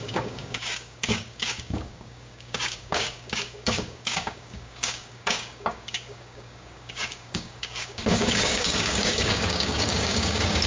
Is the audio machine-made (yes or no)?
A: yes